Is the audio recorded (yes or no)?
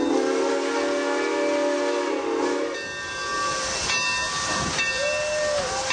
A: yes